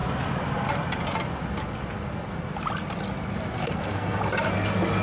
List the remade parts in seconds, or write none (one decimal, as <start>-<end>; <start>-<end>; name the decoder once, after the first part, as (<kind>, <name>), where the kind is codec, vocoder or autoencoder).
3.6-4.2 (codec, SNAC)